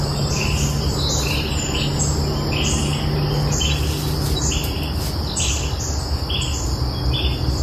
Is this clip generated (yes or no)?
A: no